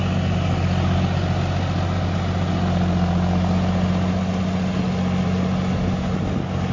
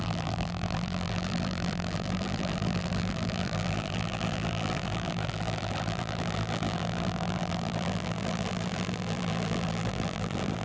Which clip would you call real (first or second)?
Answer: first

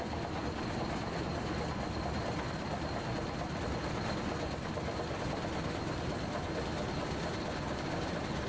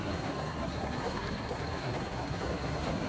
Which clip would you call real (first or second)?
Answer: first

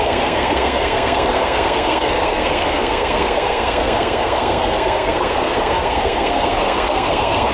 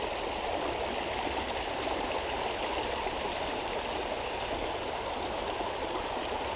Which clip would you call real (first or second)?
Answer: second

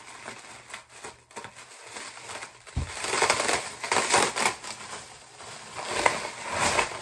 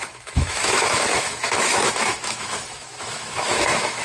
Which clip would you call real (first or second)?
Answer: first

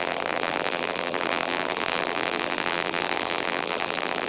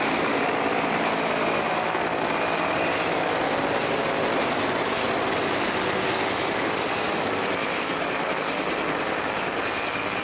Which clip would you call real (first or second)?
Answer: second